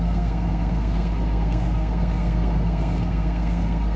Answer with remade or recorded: remade